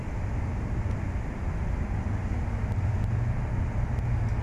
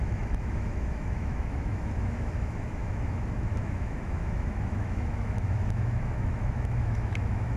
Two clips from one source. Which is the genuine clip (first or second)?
first